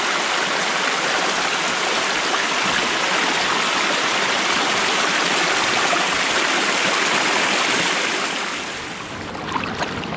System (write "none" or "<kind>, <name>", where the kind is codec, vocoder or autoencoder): none